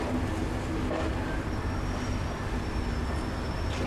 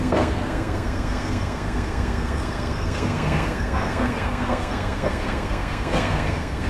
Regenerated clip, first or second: second